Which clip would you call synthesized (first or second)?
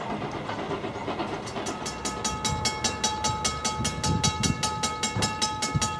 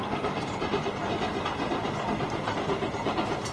second